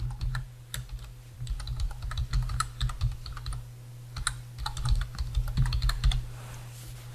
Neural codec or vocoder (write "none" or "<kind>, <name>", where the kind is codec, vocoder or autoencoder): none